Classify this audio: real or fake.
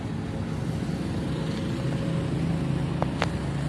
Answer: real